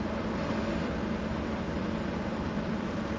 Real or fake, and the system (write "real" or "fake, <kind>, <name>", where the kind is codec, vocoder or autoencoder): real